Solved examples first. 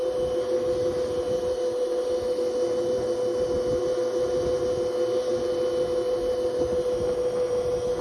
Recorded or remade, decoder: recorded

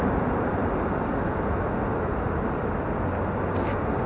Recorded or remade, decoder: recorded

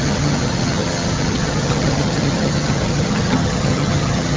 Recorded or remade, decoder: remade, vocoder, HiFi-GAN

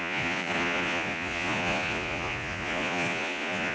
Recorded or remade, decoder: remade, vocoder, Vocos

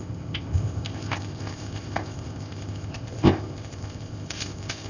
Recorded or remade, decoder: remade, codec, ZipCodec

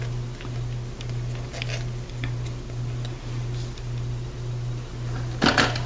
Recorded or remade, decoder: recorded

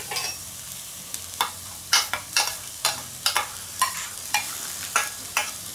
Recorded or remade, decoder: remade, vocoder, BigVGAN v2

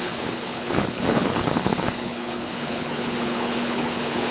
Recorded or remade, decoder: remade, codec, HILCodec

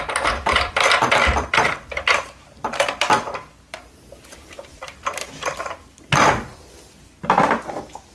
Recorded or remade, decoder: remade, vocoder, BigVGAN v2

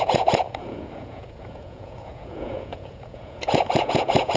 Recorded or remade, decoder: remade, vocoder, Vocos